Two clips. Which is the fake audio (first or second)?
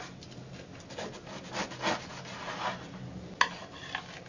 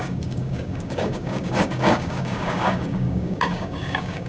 second